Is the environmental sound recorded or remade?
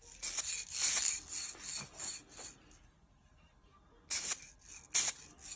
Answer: recorded